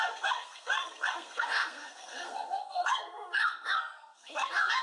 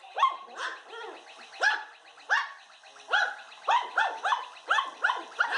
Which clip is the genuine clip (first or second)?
second